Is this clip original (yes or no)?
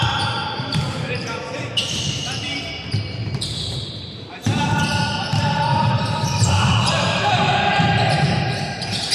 no